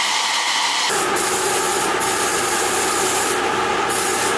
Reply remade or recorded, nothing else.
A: recorded